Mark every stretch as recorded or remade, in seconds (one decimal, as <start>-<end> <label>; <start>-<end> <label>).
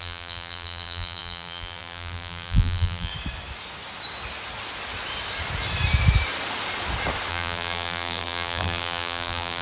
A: 0.0-3.1 remade; 3.1-7.3 recorded; 7.3-9.6 remade